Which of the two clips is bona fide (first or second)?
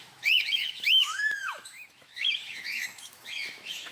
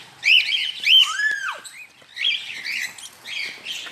second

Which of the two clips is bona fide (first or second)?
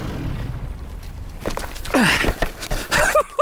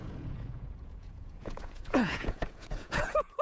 first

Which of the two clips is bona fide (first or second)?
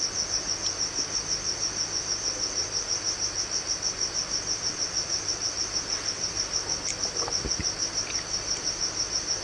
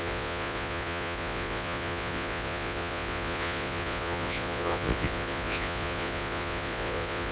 first